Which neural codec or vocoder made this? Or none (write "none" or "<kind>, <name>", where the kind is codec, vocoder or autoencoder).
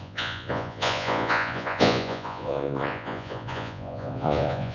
vocoder, Vocos